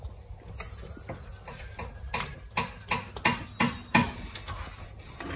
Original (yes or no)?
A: yes